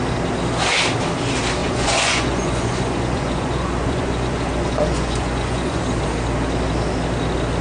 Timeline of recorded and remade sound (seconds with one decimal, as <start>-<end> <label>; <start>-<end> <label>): 0.0-1.6 recorded; 1.6-5.8 remade; 5.8-7.6 recorded